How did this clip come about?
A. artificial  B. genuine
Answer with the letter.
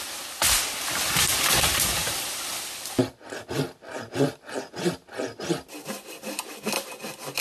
B